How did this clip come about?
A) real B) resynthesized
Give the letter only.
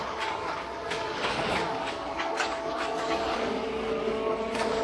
B